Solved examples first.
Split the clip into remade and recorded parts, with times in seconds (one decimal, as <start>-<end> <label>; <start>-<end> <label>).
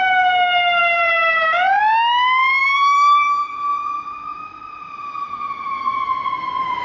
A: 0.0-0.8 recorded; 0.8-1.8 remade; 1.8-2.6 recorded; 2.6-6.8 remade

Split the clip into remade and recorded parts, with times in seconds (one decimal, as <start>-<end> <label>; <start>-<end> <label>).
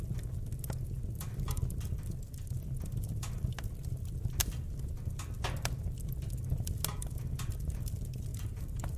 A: 0.0-4.4 recorded; 4.4-5.1 remade; 5.1-8.3 recorded; 8.3-9.0 remade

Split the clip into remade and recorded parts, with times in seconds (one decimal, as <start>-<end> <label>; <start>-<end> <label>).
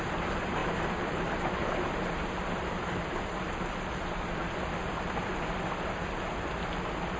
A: 0.0-0.6 recorded; 0.6-4.6 remade; 4.6-7.2 recorded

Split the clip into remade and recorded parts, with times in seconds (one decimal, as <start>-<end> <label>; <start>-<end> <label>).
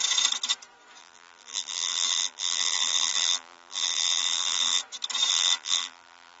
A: 0.0-1.0 recorded; 1.0-4.8 remade; 4.8-5.3 recorded; 5.3-6.4 remade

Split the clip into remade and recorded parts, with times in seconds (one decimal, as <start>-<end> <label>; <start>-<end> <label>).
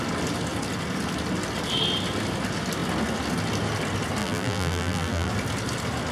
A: 0.0-4.2 recorded; 4.2-5.3 remade; 5.3-6.1 recorded